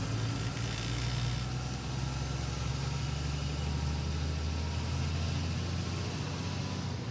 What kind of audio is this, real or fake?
real